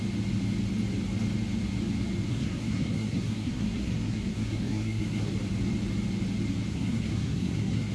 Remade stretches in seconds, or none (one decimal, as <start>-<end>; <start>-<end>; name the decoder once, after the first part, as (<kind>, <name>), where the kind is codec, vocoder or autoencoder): 2.3-5.3 (codec, SNAC); 6.7-7.9